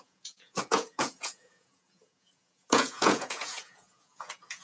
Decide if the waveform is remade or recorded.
remade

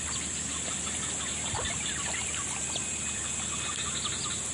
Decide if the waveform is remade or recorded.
recorded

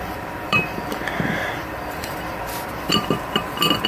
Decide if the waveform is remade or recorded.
remade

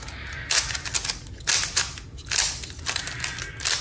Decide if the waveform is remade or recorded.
recorded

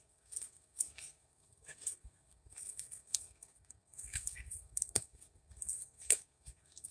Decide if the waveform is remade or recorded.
remade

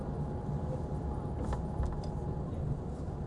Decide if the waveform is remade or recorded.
remade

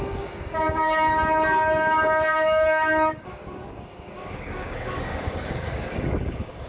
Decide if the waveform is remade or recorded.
remade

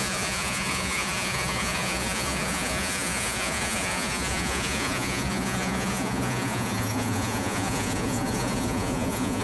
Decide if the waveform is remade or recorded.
remade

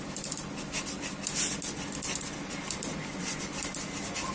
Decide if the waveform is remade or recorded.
recorded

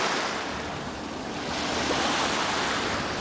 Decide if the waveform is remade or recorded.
recorded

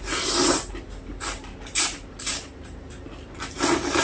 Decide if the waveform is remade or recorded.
remade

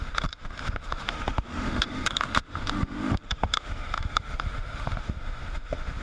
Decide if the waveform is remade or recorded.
remade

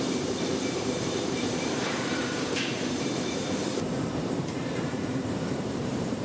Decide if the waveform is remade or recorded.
remade